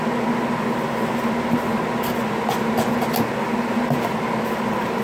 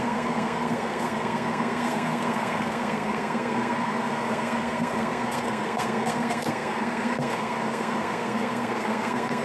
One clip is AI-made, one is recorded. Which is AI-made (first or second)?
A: second